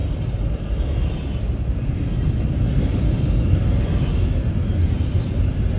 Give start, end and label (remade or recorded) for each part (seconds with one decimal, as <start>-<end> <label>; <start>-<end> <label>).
0.0-5.8 recorded